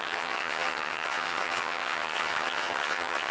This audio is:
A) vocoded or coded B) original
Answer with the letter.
A